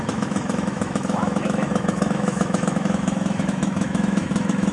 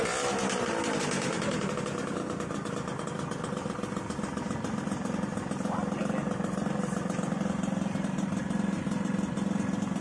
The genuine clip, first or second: second